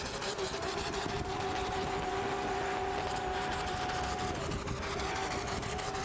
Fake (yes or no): no